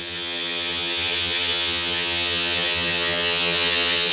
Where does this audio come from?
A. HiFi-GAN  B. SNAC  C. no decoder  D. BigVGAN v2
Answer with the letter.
A